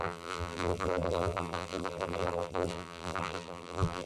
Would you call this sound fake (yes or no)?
yes